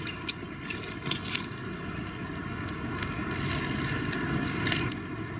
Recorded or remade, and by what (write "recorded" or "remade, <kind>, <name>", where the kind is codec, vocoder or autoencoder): recorded